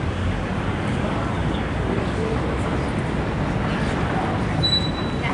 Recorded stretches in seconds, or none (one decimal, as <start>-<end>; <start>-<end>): 2.3-5.3